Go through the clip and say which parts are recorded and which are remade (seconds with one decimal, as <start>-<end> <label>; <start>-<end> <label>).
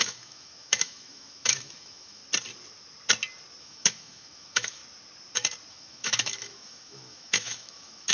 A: 0.0-2.2 remade; 2.2-3.6 recorded; 3.6-4.8 remade; 4.8-5.7 recorded; 5.7-8.1 remade